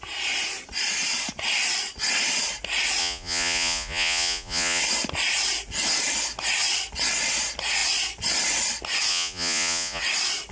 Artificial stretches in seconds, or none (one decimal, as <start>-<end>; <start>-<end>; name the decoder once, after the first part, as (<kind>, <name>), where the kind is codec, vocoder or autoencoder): 3.0-4.8 (vocoder, Vocos); 9.1-10.0